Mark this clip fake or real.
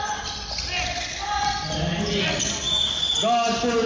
real